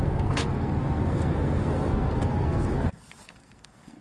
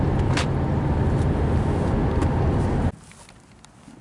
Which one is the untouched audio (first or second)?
second